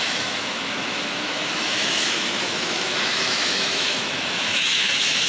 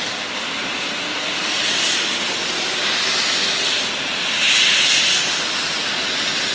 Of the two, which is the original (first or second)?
second